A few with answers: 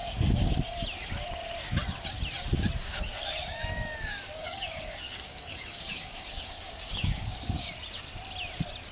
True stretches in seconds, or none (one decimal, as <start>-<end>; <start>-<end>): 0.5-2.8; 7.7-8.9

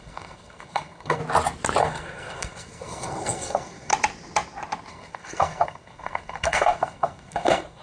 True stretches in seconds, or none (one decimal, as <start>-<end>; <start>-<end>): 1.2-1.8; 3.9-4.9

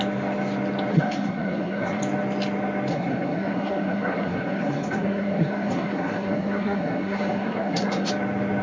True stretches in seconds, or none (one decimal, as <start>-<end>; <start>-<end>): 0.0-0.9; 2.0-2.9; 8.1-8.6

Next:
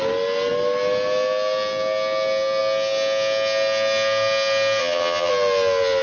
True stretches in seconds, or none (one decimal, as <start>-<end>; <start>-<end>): 0.0-4.8; 5.3-6.0

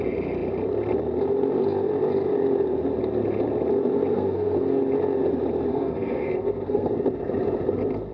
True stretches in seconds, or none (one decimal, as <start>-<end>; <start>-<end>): 0.0-4.1; 4.8-5.7; 6.9-8.1